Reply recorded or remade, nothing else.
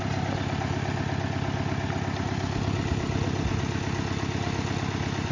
recorded